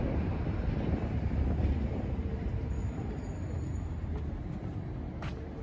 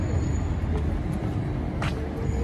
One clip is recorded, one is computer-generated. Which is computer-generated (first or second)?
first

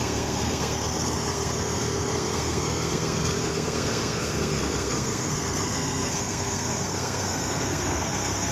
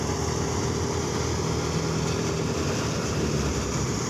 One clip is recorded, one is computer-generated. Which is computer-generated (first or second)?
first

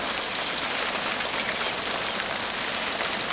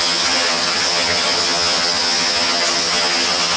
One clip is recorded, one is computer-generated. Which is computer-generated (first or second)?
second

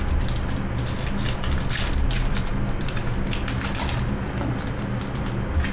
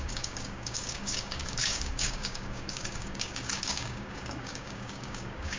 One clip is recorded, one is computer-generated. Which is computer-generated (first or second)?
second